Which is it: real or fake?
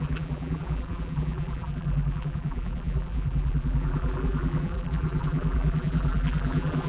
fake